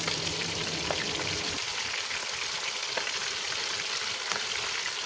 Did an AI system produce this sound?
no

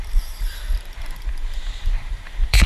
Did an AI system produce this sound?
yes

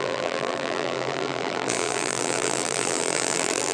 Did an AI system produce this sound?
yes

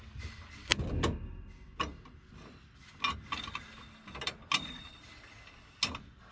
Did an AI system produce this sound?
no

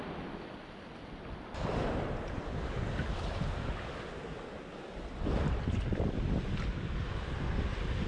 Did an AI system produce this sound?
no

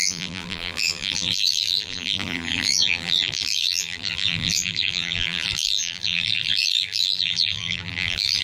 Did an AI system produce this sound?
yes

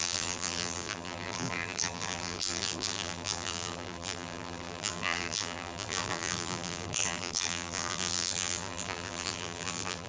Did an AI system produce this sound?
yes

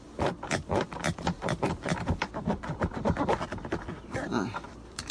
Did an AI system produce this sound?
yes